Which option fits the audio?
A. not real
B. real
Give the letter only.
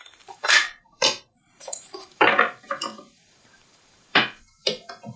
A